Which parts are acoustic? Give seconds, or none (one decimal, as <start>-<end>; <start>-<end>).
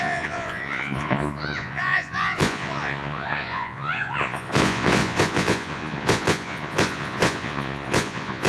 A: none